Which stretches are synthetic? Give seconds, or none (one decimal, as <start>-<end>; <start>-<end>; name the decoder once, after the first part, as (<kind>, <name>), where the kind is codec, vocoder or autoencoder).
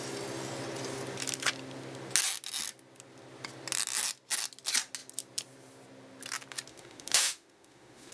6.7-8.1 (autoencoder, DAC-VAE)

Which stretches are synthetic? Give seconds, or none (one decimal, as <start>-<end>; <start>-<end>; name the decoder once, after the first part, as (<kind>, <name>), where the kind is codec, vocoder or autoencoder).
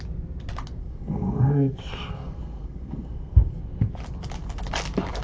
0.8-3.6 (codec, SNAC)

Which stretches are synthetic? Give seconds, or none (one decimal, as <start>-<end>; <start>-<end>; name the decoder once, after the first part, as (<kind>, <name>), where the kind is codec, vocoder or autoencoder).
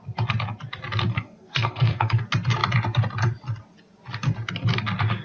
1.1-2.2 (codec, SNAC)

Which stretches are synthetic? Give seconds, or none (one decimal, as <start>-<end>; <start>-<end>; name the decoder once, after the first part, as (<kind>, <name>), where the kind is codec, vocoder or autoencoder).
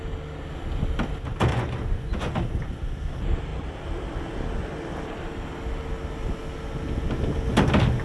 1.5-2.3 (vocoder, Vocos)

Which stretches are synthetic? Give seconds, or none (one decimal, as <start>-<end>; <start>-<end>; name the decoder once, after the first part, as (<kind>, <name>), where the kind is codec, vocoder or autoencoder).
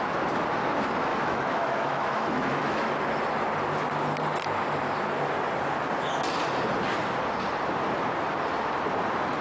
1.1-2.9 (autoencoder, DAC-VAE)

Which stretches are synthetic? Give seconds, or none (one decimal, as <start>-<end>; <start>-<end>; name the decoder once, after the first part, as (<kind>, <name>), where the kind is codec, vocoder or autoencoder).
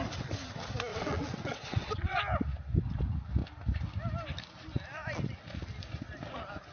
0.9-2.2 (vocoder, WaveNeXt)